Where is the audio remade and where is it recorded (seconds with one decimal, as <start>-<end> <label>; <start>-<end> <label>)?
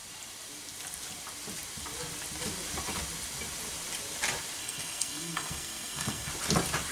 0.0-4.6 recorded; 4.6-6.3 remade; 6.3-6.9 recorded